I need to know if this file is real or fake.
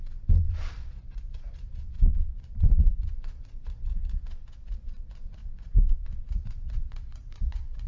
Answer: fake